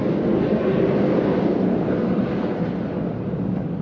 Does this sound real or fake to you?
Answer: real